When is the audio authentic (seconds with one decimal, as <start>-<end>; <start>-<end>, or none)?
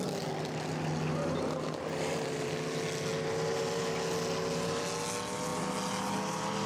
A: 0.0-6.7